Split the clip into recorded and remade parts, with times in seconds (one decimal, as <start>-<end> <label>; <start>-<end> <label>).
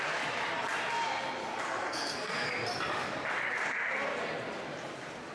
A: 0.0-1.8 recorded; 1.8-2.5 remade; 2.5-5.3 recorded